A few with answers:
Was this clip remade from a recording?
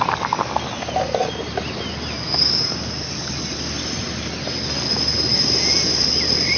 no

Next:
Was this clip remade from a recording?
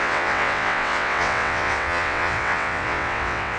yes